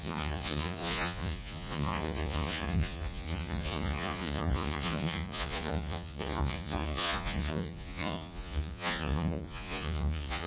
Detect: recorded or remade remade